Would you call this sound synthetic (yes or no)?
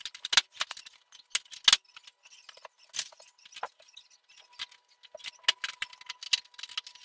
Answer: no